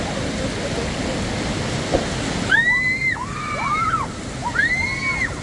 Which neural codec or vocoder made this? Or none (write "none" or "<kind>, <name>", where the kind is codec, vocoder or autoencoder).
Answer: none